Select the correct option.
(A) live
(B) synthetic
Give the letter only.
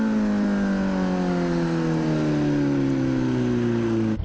A